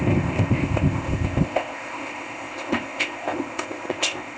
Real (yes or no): no